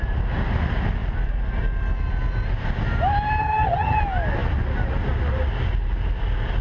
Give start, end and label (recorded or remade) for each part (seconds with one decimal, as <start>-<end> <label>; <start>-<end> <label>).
0.0-3.4 recorded; 3.4-4.0 remade; 4.0-6.6 recorded